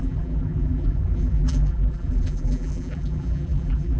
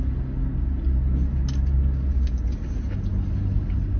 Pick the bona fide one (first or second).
second